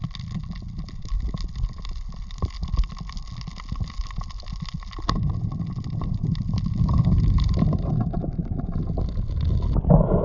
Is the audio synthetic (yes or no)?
no